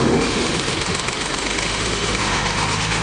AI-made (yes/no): yes